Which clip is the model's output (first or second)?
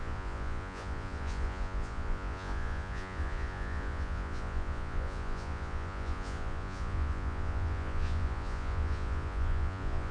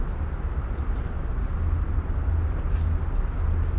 first